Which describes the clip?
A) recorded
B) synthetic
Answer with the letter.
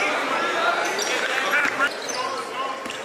A